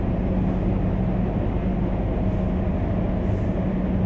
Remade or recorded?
recorded